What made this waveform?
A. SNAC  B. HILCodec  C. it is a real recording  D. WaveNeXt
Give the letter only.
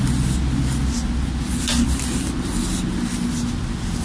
C